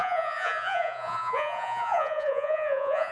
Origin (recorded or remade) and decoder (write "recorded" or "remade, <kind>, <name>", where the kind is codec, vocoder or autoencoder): remade, vocoder, Vocos